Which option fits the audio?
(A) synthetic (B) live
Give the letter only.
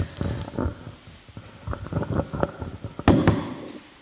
B